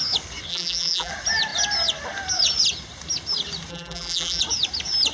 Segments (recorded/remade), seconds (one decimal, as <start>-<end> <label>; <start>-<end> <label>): 0.0-0.5 recorded; 0.5-1.1 remade; 1.1-3.7 recorded; 3.7-4.4 remade; 4.4-5.1 recorded